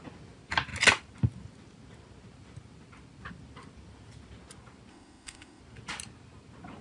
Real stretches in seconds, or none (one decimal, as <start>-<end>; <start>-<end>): 0.0-4.9; 5.6-6.8